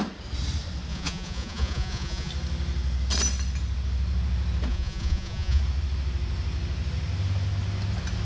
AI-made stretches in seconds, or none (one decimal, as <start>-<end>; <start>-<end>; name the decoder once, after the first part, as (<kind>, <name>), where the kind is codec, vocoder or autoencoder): 0.9-2.3 (vocoder, Vocos); 4.7-5.6

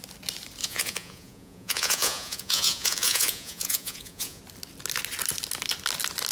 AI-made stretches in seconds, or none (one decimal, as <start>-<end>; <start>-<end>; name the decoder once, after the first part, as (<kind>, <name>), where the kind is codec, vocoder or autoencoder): 0.6-4.4 (vocoder, Vocos)

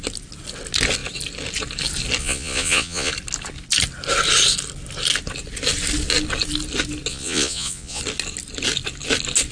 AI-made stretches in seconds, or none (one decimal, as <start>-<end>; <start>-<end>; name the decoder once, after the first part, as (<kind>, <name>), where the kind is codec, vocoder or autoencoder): 2.2-3.1 (vocoder, Vocos); 7.1-8.0